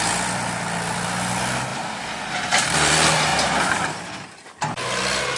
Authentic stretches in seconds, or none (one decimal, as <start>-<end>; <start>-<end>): 0.0-5.4